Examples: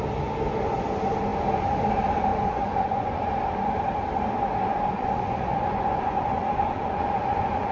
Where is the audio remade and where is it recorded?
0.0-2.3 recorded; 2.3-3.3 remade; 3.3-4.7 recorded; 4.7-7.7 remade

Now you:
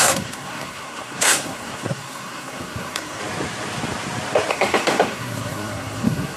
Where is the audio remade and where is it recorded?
0.0-3.2 remade; 3.2-4.5 recorded; 4.5-6.4 remade